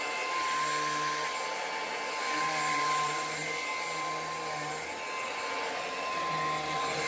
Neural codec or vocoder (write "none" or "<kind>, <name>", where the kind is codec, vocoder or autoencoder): none